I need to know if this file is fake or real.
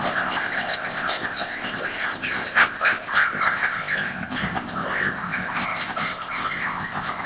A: fake